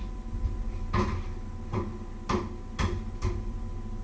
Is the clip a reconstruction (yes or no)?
no